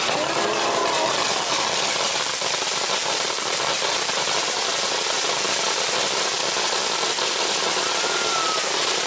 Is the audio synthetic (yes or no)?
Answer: no